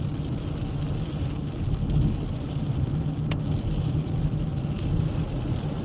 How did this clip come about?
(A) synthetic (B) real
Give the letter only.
B